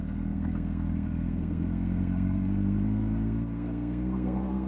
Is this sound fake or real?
fake